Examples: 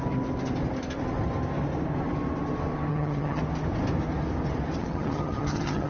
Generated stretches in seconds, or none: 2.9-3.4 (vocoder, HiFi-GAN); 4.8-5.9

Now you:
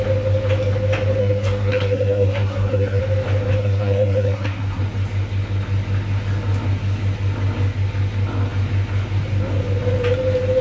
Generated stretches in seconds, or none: 1.2-3.0 (codec, SNAC); 3.6-4.8

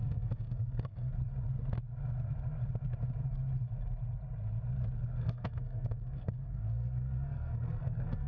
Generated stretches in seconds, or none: 0.0-1.1 (codec, SNAC); 5.2-8.3

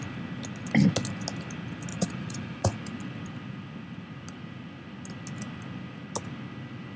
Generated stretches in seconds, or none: 1.9-2.8 (vocoder, Vocos)

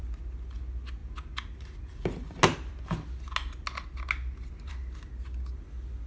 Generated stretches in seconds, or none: none

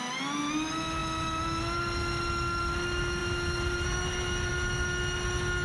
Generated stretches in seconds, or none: 3.2-4.5 (vocoder, BigVGAN v2)

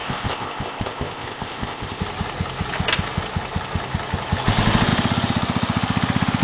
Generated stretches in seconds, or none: 0.0-2.0 (codec, ZipCodec)